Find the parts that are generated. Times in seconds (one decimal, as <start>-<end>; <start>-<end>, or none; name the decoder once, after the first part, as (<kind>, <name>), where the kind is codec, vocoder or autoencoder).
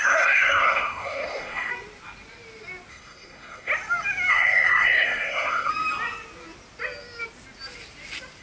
0.0-1.7 (codec, SNAC); 2.9-3.7; 4.3-5.7